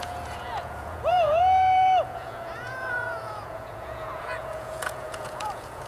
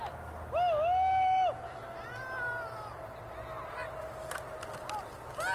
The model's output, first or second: first